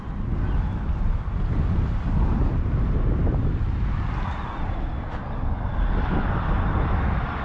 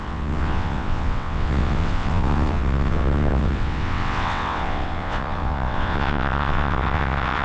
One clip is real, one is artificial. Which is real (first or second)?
first